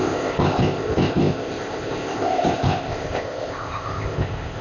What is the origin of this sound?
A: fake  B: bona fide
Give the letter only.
A